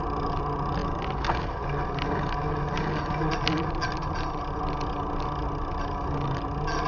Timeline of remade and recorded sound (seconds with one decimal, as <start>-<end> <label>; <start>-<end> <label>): 0.0-6.9 recorded